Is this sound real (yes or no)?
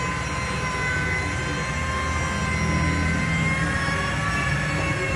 yes